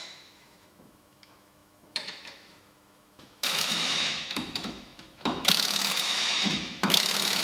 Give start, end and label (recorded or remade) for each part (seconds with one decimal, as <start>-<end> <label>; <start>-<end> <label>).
0.0-7.4 remade